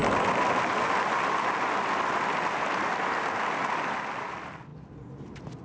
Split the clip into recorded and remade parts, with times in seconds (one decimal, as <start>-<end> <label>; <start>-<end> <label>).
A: 0.0-5.6 recorded